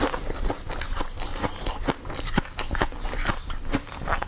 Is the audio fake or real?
real